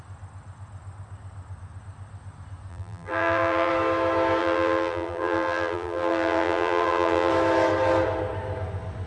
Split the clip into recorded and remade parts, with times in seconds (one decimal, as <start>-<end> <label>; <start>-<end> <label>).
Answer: 0.0-2.7 recorded; 2.7-3.7 remade; 3.7-4.4 recorded; 4.4-7.3 remade; 7.3-9.1 recorded